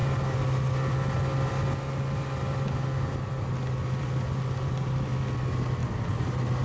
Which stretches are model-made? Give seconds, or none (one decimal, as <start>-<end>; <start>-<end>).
none